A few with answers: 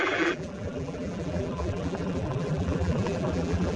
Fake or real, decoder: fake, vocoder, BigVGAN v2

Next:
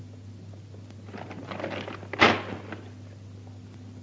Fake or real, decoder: real